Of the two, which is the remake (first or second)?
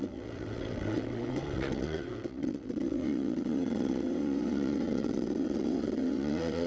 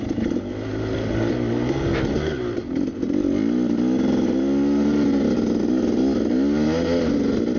first